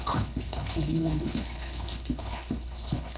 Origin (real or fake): fake